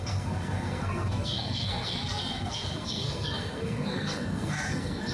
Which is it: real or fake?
fake